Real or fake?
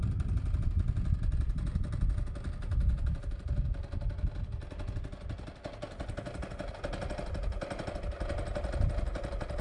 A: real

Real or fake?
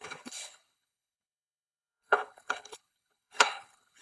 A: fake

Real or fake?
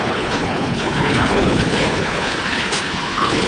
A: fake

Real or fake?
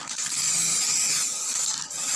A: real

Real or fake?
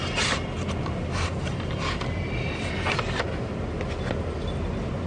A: real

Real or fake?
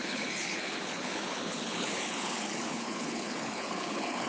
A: fake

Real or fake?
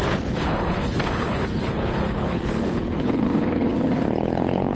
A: fake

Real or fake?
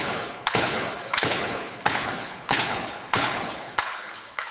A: fake